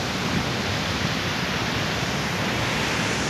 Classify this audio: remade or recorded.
recorded